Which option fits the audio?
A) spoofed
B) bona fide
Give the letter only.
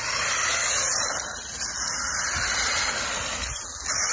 B